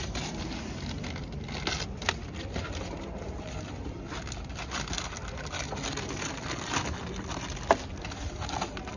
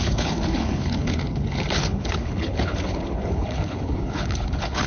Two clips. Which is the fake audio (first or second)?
second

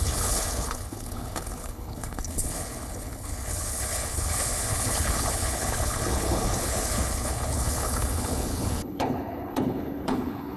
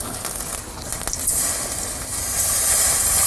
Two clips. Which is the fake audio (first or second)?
first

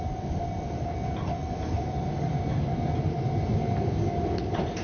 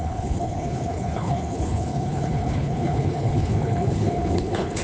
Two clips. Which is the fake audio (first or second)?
second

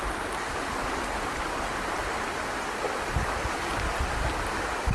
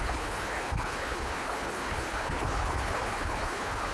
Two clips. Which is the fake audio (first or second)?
second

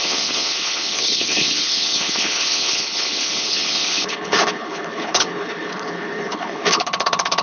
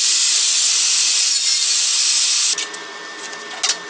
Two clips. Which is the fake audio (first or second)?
first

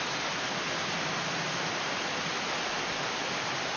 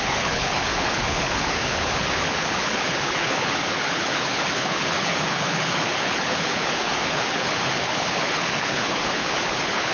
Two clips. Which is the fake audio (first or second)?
second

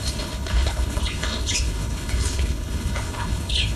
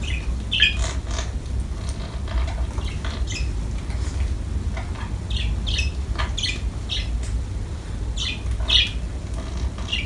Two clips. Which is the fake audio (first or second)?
first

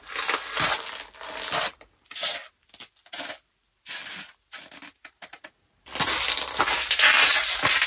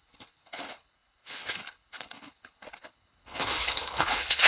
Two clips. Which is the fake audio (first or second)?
second